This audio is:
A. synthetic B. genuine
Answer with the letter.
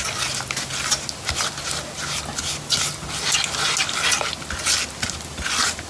B